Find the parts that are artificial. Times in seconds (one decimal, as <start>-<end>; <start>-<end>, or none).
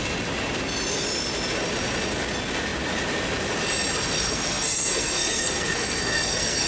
4.2-6.7